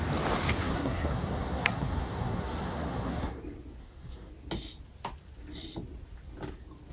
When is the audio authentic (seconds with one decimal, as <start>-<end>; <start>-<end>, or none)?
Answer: 0.0-0.6; 3.4-3.8; 4.3-6.9